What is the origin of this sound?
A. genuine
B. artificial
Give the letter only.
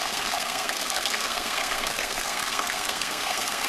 B